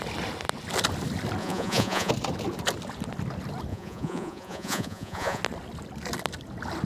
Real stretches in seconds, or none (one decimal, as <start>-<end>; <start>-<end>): 0.0-1.4; 2.1-3.7; 5.4-6.9